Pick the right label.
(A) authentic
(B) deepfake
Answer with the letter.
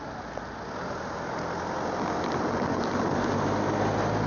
A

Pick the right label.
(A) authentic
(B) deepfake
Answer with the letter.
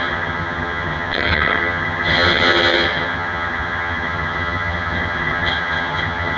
B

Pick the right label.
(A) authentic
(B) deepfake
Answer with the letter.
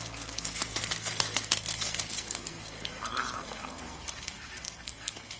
B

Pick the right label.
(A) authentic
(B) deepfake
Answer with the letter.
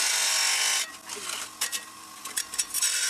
A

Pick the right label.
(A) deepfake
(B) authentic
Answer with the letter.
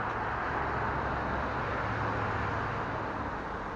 B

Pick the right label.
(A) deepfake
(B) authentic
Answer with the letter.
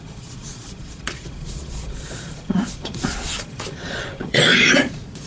A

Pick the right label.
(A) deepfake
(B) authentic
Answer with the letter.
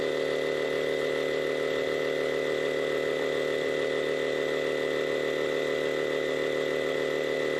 B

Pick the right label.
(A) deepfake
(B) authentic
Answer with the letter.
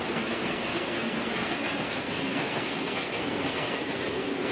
A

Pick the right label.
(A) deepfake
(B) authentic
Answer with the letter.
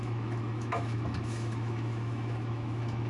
A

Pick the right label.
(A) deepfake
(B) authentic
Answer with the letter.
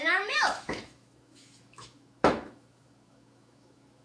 A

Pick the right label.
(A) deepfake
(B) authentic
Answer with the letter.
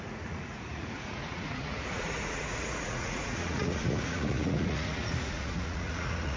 A